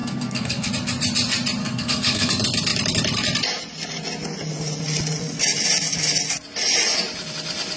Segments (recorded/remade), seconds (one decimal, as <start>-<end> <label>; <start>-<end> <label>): 0.0-0.7 remade; 0.7-1.6 recorded; 1.6-2.3 remade; 2.3-7.8 recorded